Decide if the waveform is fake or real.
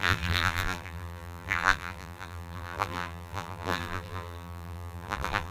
fake